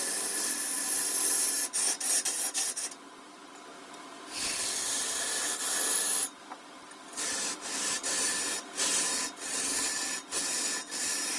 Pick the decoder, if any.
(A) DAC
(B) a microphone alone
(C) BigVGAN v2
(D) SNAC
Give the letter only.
B